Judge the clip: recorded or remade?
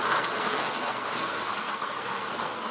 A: remade